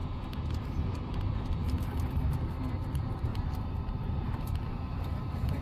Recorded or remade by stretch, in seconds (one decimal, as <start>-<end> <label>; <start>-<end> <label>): 0.0-2.3 remade; 2.3-3.3 recorded; 3.3-5.6 remade